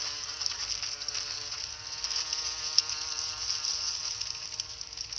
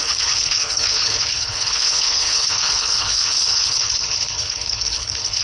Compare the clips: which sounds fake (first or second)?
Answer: second